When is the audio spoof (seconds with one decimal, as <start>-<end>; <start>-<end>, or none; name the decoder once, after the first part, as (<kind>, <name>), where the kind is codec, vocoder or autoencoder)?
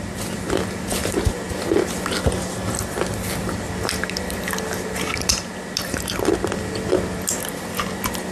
none